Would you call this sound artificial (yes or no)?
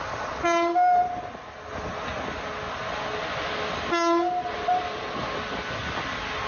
no